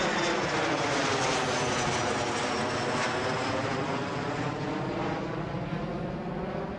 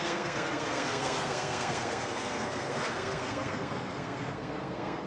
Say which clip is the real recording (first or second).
first